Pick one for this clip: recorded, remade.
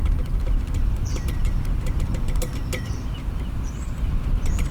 recorded